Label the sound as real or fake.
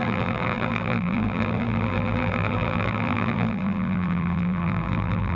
fake